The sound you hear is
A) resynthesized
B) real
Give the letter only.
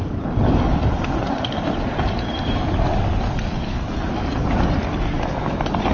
B